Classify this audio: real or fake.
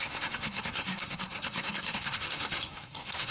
fake